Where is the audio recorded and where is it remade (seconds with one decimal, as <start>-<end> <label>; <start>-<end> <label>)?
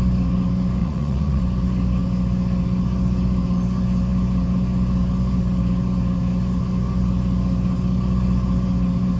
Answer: 0.0-0.8 recorded; 0.8-1.4 remade; 1.4-9.2 recorded